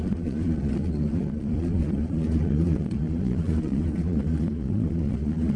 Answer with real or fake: fake